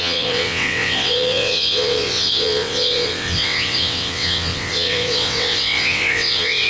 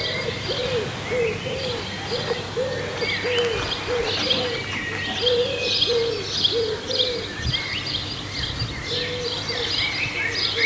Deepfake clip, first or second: first